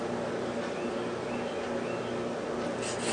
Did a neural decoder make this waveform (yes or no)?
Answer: no